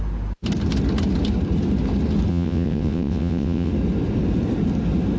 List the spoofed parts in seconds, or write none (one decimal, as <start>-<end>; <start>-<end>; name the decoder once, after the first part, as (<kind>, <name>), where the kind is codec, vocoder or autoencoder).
2.3-3.7 (vocoder, WaveNeXt)